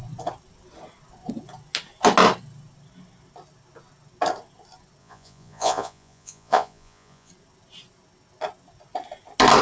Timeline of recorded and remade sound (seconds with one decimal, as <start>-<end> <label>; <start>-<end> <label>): 0.0-5.0 recorded; 5.0-7.3 remade; 7.3-9.6 recorded